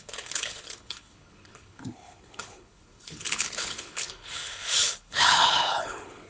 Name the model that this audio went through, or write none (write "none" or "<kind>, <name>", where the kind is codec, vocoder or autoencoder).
codec, HILCodec